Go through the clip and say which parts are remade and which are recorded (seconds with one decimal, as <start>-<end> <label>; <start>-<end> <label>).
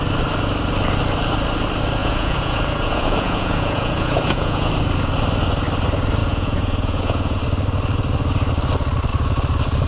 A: 0.0-2.0 recorded; 2.0-4.7 remade; 4.7-6.2 recorded; 6.2-7.4 remade; 7.4-9.9 recorded